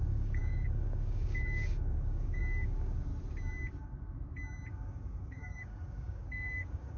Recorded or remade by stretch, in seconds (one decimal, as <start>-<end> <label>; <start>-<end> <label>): 0.0-3.1 remade; 3.1-4.7 recorded; 4.7-7.0 remade